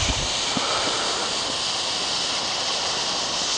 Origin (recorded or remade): recorded